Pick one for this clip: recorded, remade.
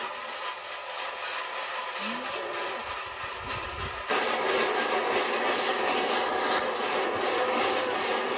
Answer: recorded